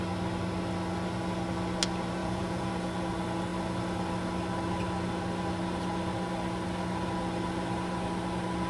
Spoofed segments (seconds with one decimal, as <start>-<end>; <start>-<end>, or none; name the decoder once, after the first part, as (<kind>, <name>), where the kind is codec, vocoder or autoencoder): 2.2-2.7 (vocoder, Vocos)